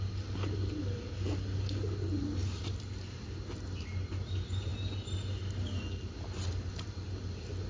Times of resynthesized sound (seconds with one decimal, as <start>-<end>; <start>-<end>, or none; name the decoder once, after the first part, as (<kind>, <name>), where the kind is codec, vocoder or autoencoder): none